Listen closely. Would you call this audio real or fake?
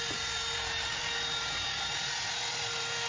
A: real